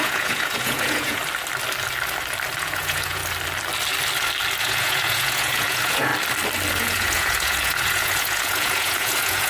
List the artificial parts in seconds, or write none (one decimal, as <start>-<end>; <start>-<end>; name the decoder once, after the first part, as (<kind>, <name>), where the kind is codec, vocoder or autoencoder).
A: 0.0-1.2 (vocoder, Vocos); 2.6-3.2; 4.6-6.1; 6.7-9.5